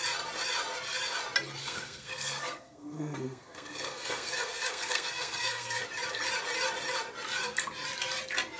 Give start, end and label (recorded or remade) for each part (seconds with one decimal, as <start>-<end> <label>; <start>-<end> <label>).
0.0-1.6 recorded; 1.6-5.8 remade; 5.8-8.6 recorded